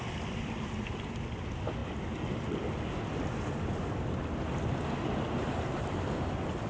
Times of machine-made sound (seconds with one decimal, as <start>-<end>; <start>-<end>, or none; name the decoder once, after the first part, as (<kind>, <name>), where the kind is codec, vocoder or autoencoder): none